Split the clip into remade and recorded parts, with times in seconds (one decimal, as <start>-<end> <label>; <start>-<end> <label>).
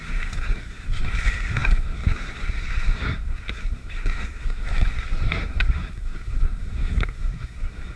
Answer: 0.0-8.0 remade